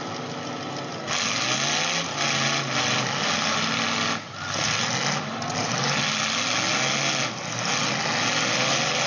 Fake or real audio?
real